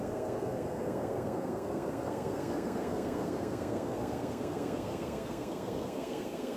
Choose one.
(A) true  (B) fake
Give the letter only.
B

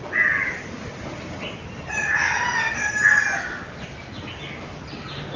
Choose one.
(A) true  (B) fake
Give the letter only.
A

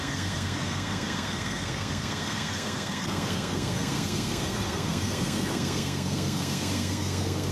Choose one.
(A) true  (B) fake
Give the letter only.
B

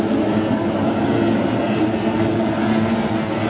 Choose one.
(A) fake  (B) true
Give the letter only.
B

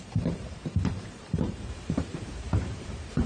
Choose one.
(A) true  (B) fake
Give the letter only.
B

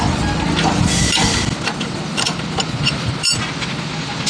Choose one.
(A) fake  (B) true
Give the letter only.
B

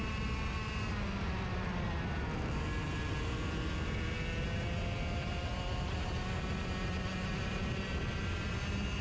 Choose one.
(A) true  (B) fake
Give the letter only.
A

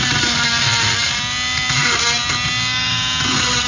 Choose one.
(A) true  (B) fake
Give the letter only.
A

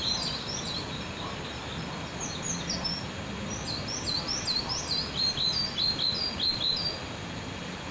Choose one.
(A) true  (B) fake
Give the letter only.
B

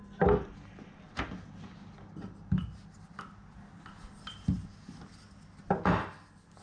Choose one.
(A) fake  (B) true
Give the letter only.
B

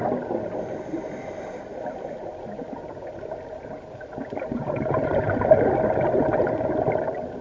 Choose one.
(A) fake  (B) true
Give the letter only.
B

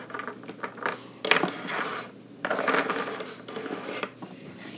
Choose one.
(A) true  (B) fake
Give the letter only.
A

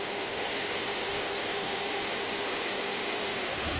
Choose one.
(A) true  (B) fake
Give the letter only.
B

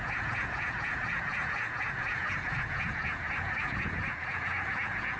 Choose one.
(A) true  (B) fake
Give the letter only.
B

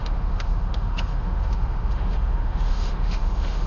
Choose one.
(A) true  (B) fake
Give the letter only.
B